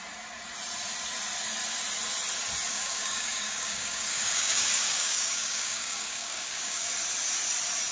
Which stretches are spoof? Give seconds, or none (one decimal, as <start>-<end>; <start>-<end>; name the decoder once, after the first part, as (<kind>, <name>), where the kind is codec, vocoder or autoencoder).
2.7-6.9 (codec, DAC)